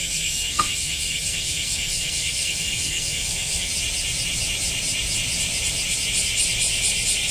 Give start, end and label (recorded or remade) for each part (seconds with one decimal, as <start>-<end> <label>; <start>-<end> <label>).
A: 0.0-3.7 remade; 3.7-7.3 recorded